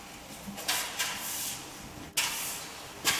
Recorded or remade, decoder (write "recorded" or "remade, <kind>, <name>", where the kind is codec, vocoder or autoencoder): recorded